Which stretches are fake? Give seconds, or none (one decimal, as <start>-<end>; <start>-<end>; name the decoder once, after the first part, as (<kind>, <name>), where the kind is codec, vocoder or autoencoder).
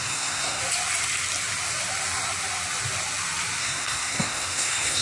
0.0-0.6 (codec, SNAC); 3.6-5.0